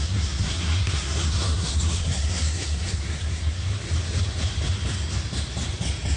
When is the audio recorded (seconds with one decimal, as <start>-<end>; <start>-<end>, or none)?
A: 3.7-6.2